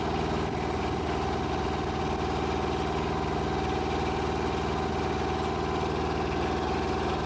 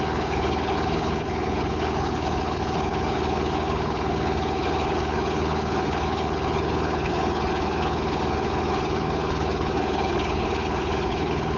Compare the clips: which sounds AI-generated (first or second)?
second